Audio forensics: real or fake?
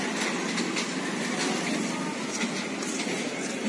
real